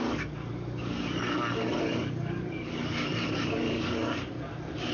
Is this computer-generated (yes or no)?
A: yes